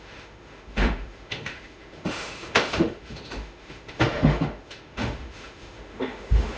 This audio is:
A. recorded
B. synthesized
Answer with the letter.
B